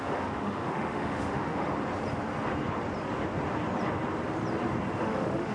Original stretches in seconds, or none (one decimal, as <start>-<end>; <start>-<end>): 1.7-5.0